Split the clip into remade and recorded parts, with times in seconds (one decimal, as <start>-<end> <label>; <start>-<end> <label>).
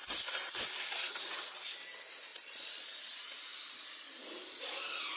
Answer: 0.0-2.3 recorded; 2.3-2.9 remade; 2.9-5.2 recorded